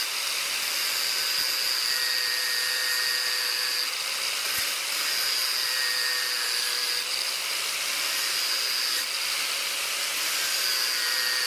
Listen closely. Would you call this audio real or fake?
real